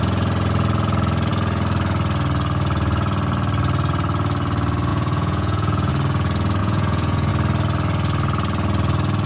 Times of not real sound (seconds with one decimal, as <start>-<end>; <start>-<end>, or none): 4.9-5.9; 6.6-7.3